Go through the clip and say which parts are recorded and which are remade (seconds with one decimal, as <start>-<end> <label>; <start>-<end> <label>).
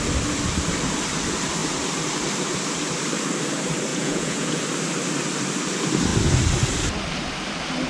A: 0.0-3.9 recorded; 3.9-4.6 remade; 4.6-7.9 recorded